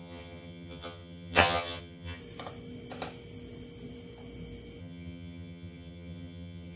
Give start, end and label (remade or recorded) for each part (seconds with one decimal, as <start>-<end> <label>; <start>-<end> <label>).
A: 0.0-2.2 remade; 2.2-4.8 recorded; 4.8-6.8 remade